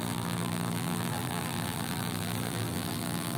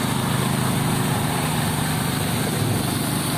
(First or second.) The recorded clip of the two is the second